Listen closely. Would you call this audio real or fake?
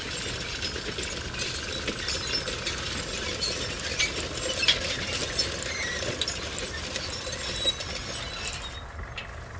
real